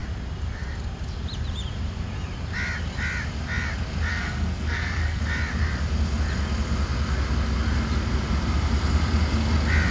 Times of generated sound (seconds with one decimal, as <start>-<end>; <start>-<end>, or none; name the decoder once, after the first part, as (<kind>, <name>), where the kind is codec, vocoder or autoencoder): 4.1-5.2 (codec, SNAC)